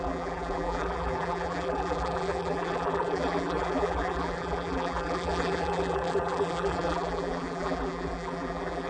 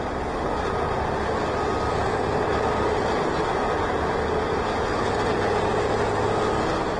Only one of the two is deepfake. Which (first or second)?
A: first